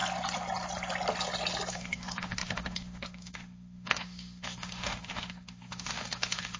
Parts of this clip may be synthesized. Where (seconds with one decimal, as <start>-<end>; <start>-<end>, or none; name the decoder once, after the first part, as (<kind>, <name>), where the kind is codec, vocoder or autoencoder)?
1.7-6.6 (autoencoder, DAC-VAE)

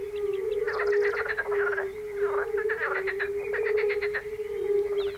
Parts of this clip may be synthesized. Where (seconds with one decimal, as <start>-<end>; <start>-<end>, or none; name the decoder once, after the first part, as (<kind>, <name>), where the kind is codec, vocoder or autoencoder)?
0.0-1.7 (vocoder, BigVGAN v2); 4.8-5.2

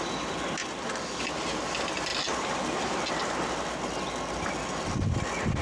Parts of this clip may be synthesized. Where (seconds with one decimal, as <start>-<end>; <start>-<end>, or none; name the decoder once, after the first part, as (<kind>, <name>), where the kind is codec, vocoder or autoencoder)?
none